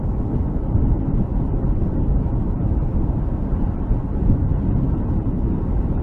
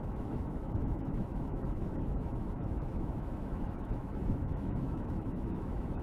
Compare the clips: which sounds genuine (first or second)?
first